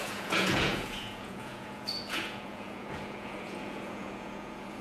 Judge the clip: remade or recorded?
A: remade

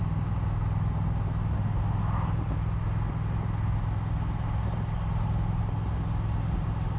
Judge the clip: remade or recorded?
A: recorded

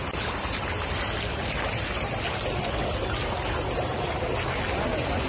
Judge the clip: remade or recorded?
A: recorded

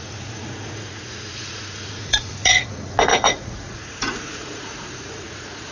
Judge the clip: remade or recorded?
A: remade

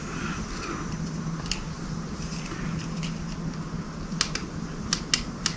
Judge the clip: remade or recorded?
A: recorded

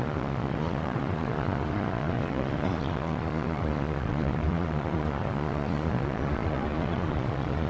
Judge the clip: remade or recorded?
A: remade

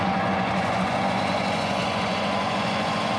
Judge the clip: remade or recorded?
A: remade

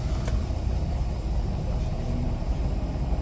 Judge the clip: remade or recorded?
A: recorded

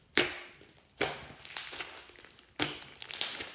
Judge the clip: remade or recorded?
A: recorded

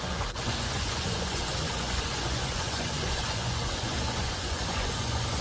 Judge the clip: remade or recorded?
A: remade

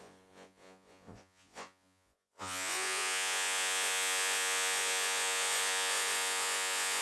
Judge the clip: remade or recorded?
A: remade